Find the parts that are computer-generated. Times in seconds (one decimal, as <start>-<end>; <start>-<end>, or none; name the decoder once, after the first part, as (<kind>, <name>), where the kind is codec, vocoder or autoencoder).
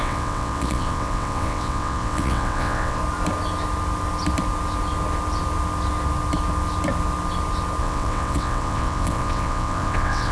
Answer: 0.0-3.0 (vocoder, WaveNeXt); 7.8-10.3